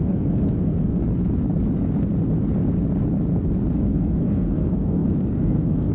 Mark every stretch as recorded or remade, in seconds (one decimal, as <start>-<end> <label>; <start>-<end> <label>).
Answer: 0.0-1.0 remade; 1.0-3.8 recorded; 3.8-5.9 remade